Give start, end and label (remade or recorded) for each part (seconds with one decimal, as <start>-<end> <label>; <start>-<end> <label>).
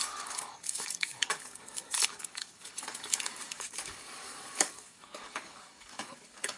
0.0-6.6 remade